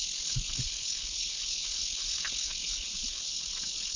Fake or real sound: fake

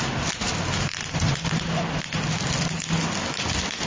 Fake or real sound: real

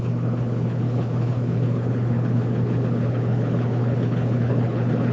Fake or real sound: fake